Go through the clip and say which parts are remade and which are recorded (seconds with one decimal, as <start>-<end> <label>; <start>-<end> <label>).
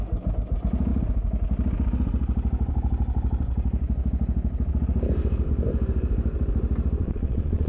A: 0.0-7.0 recorded; 7.0-7.7 remade